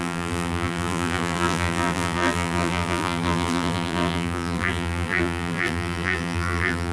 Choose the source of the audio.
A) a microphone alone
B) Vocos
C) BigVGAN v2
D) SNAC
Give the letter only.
C